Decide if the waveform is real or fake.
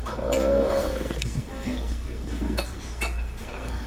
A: fake